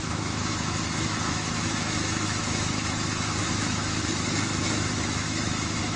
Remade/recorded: remade